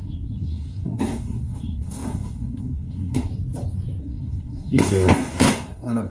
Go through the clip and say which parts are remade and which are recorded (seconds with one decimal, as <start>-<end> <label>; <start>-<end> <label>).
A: 0.0-3.3 remade; 3.3-4.0 recorded; 4.0-6.1 remade